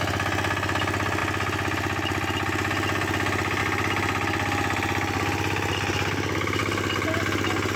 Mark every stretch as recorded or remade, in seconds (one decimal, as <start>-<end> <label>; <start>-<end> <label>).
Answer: 0.0-7.8 recorded